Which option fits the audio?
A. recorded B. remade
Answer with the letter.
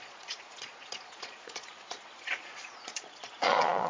B